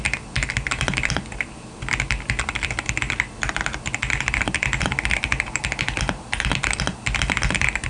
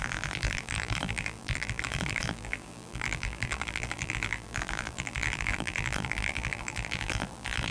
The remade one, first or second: second